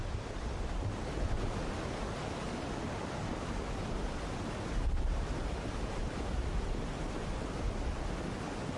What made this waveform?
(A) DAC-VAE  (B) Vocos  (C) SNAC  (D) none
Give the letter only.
D